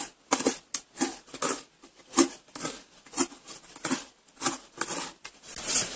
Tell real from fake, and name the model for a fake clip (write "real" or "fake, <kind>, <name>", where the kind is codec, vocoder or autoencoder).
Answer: real